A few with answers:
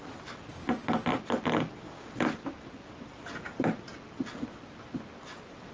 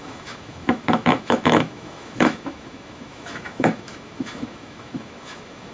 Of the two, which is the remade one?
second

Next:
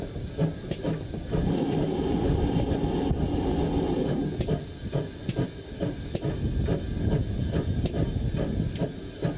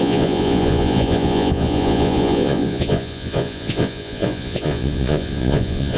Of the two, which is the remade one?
second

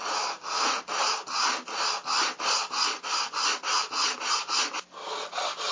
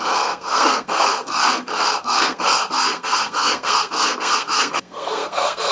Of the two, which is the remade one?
second